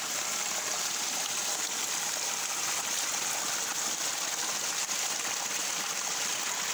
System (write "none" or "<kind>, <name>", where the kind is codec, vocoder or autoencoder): none